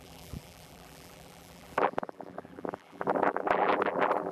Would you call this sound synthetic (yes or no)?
yes